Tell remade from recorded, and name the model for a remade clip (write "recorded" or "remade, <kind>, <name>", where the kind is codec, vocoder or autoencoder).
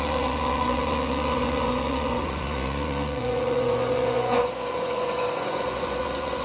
remade, vocoder, Vocos